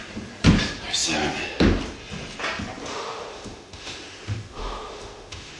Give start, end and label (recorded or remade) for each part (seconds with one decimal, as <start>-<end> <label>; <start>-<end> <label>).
0.0-2.9 recorded; 2.9-5.6 remade